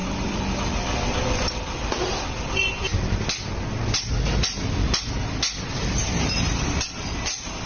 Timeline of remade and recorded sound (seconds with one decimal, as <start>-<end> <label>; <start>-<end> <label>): 0.0-7.7 recorded